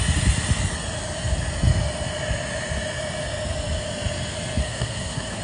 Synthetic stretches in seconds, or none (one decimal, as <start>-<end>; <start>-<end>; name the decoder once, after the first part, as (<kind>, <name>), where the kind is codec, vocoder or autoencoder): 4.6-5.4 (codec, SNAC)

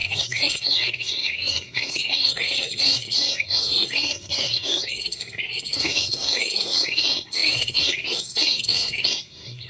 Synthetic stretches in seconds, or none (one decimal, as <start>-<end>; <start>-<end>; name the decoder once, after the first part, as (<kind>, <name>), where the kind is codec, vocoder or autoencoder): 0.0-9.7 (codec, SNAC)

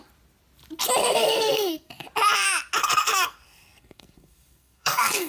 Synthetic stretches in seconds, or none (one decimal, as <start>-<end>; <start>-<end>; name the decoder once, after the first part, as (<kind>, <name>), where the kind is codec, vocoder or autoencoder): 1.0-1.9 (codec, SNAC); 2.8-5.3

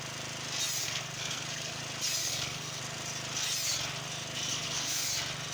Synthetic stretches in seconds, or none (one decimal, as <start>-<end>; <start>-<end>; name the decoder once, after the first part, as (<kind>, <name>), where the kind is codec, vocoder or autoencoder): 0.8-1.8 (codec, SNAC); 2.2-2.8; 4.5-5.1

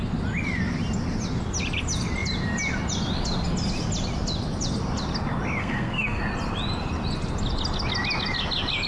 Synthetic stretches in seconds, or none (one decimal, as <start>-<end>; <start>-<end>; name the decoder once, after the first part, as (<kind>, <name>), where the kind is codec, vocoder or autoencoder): 5.6-6.2 (codec, SNAC)

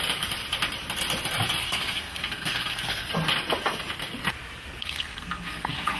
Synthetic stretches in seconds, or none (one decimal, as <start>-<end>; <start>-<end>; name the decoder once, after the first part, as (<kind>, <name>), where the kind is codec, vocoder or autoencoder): 1.6-3.1 (codec, SNAC); 4.8-6.0

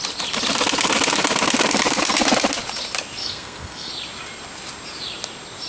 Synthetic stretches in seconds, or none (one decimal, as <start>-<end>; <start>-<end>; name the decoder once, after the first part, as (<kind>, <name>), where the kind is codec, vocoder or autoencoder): 3.2-3.9 (codec, SNAC)

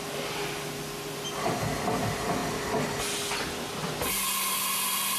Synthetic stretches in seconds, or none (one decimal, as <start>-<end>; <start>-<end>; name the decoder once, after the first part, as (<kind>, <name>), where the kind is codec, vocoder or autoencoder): none